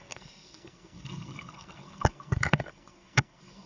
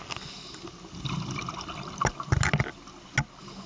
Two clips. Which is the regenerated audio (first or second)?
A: first